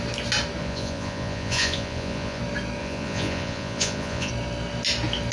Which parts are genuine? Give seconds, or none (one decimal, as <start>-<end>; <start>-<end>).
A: 0.0-0.6; 2.4-2.8; 4.3-5.3